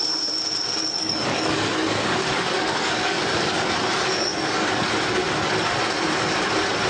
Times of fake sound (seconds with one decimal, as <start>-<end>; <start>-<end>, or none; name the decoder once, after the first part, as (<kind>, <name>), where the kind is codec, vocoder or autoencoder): 1.0-3.2 (codec, DAC); 4.2-4.9

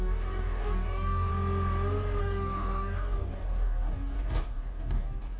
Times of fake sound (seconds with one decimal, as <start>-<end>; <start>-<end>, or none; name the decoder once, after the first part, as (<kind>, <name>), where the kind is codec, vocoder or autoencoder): 0.0-1.3 (codec, DAC); 2.2-5.4

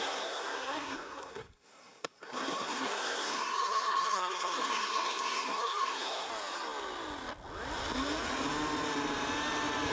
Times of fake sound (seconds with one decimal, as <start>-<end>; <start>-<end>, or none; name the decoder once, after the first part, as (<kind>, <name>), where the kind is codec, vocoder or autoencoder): 0.0-6.3 (codec, SNAC)

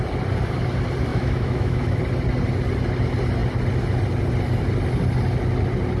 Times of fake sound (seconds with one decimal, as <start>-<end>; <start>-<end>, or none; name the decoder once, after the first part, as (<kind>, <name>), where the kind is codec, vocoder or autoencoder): 1.1-2.0 (autoencoder, DAC-VAE)